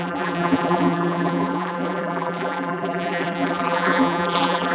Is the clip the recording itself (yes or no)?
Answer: no